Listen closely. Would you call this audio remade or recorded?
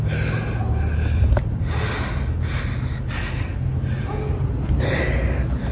recorded